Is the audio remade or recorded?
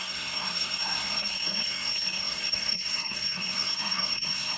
remade